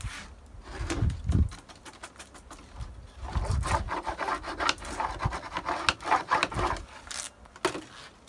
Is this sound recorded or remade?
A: recorded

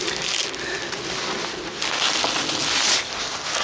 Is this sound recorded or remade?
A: recorded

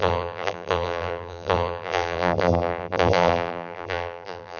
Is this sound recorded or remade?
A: remade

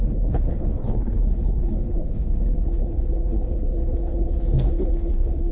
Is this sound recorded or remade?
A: remade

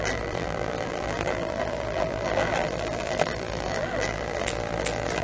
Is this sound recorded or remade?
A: remade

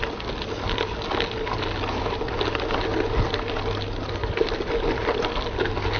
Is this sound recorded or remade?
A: recorded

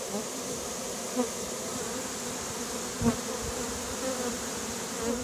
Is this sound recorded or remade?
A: remade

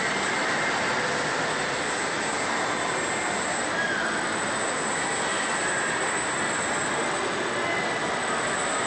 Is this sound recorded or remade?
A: recorded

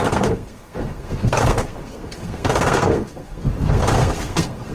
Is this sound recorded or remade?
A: remade